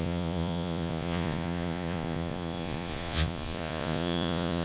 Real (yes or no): no